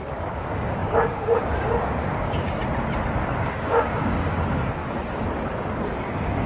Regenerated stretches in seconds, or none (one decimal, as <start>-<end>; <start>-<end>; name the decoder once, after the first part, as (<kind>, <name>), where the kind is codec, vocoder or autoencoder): 0.0-2.6 (codec, DAC); 3.4-4.8; 5.3-6.5